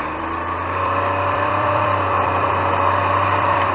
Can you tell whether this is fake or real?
fake